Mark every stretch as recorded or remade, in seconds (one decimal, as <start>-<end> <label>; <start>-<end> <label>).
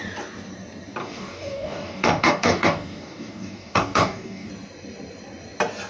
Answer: 0.0-1.0 recorded; 1.0-4.5 remade; 4.5-5.9 recorded